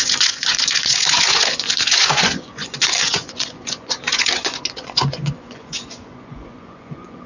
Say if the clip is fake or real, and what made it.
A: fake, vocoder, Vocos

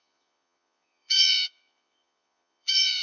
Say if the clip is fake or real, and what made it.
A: fake, vocoder, Vocos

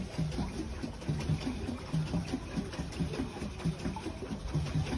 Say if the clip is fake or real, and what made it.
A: real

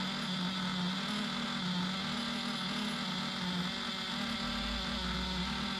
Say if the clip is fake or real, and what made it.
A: real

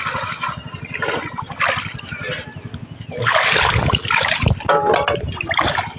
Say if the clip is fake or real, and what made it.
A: real